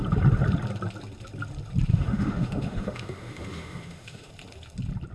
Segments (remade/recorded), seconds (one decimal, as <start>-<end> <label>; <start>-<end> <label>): 0.0-1.9 recorded; 1.9-4.3 remade; 4.3-5.1 recorded